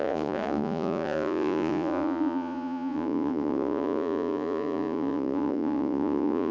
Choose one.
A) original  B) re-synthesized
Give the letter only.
B